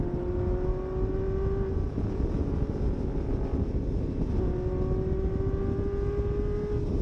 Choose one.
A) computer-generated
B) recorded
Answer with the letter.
B